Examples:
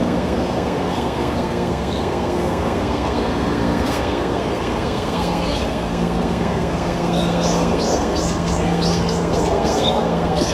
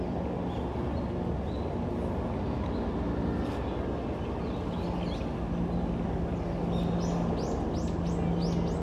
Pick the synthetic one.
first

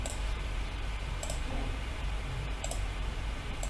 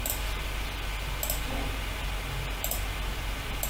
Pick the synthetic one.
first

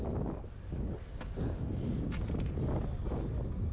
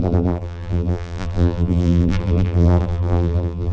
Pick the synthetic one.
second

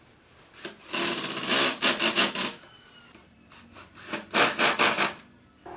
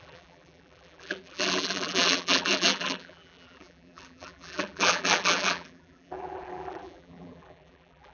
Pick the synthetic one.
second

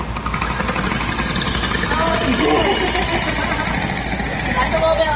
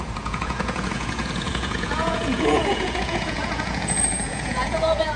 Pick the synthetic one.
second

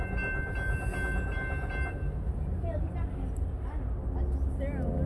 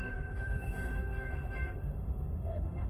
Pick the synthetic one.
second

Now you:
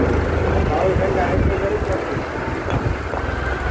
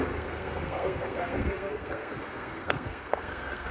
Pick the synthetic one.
second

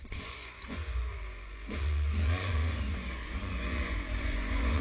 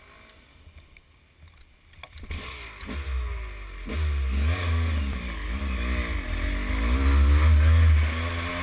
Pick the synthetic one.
first